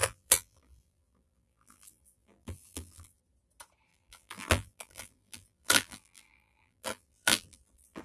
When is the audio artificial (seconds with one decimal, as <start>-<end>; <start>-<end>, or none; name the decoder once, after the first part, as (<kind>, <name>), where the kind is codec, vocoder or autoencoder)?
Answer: 0.0-3.2 (vocoder, BigVGAN v2); 3.9-8.0